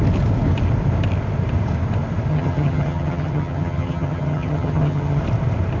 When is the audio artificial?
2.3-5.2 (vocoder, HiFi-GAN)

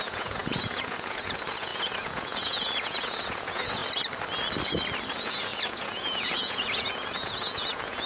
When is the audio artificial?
0.0-3.8 (vocoder, Vocos); 5.1-8.1

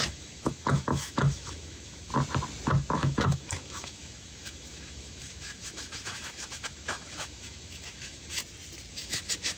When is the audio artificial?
0.0-2.1 (autoencoder, DAC-VAE); 2.7-8.4; 8.9-9.6

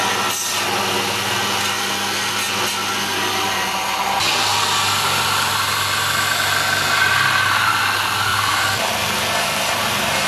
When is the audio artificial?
8.3-9.9 (vocoder, BigVGAN v2)

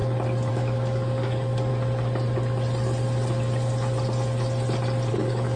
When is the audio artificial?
0.5-1.7 (codec, DAC); 5.1-5.6

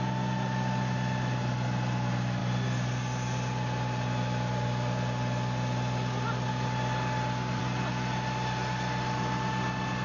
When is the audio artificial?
none

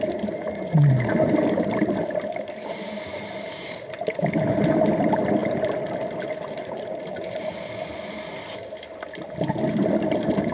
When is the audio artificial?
none

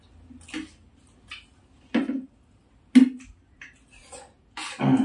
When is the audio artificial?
none